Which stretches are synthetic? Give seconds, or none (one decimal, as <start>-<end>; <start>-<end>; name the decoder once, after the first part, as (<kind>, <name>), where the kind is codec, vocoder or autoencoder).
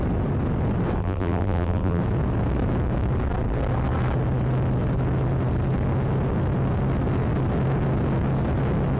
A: 1.0-2.0 (vocoder, BigVGAN v2)